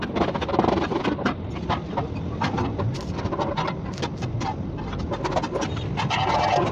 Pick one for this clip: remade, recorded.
recorded